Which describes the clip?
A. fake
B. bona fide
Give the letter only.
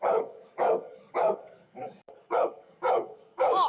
A